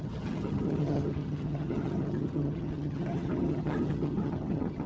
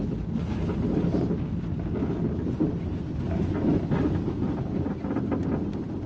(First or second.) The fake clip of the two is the first